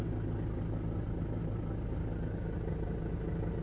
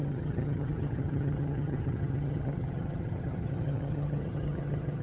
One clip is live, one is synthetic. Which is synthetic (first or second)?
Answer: second